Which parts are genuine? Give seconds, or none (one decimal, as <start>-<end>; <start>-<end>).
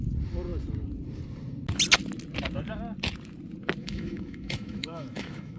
0.0-3.8